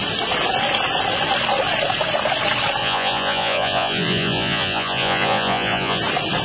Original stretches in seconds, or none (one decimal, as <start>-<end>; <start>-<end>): 0.0-2.8; 6.0-6.4